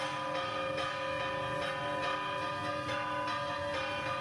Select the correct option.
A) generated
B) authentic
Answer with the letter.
B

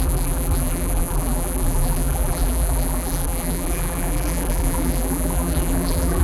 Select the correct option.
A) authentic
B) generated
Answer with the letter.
B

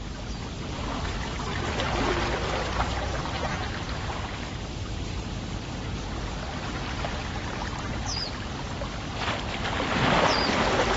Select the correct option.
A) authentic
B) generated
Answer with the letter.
A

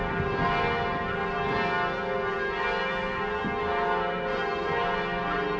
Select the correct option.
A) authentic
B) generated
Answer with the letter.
A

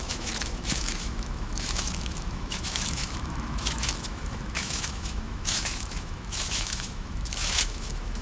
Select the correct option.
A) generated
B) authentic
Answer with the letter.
A